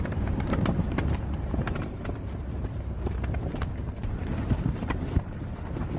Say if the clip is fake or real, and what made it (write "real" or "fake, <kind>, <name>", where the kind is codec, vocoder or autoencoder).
fake, vocoder, BigVGAN v2